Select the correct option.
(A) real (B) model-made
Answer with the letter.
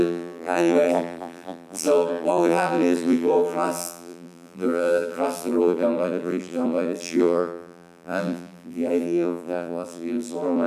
B